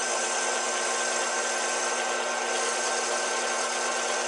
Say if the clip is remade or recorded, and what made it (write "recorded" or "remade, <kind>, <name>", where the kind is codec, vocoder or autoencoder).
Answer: recorded